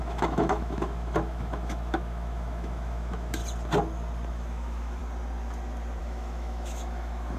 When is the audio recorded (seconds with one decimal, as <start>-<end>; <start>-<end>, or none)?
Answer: 3.4-4.3; 5.0-6.0